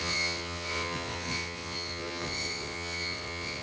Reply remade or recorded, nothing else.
remade